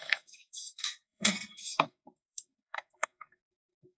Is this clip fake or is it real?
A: fake